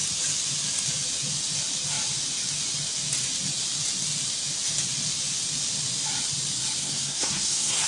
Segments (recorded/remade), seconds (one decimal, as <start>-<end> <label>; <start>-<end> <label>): 0.0-6.8 recorded; 6.8-7.9 remade

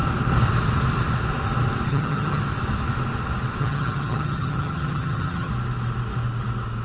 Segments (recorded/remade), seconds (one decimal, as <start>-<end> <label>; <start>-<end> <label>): 0.0-1.9 recorded; 1.9-2.4 remade; 2.4-3.6 recorded; 3.6-5.5 remade; 5.5-6.8 recorded

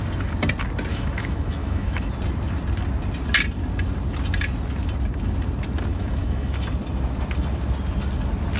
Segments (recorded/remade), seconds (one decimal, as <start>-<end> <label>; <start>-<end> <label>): 0.0-0.9 recorded; 0.9-2.1 remade; 2.1-5.9 recorded; 5.9-6.5 remade; 6.5-8.6 recorded

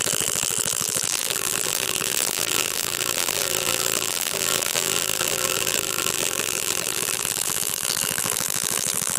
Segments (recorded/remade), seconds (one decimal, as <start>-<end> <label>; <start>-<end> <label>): 0.0-9.2 remade

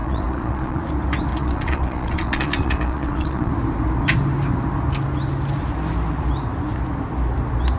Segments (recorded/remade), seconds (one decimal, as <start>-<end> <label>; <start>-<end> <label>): 0.0-0.8 remade; 0.8-1.3 recorded; 1.3-3.5 remade; 3.5-7.8 recorded

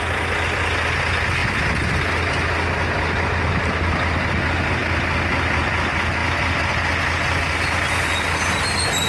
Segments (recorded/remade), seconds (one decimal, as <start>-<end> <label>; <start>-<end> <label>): 0.0-9.1 recorded

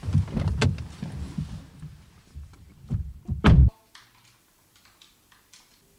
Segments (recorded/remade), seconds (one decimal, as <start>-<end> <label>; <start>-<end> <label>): 0.0-2.2 recorded; 2.2-3.6 remade; 3.6-4.4 recorded; 4.4-6.0 remade